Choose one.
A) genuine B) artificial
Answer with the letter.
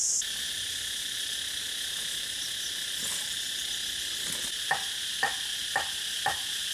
B